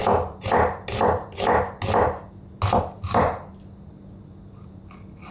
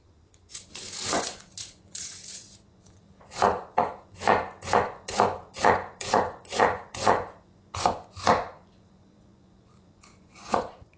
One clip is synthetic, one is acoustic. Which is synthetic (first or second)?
second